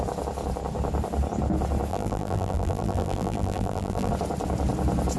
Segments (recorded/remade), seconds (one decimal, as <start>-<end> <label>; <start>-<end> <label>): 0.0-1.9 recorded; 1.9-4.1 remade; 4.1-5.2 recorded